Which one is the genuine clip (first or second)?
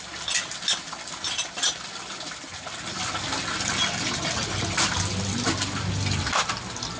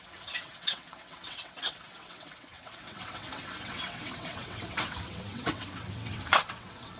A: first